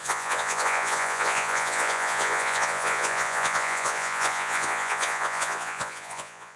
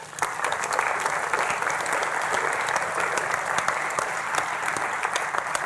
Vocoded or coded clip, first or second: first